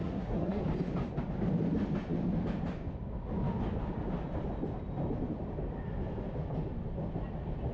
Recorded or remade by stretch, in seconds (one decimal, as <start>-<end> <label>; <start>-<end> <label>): 0.0-0.6 remade; 0.6-7.7 recorded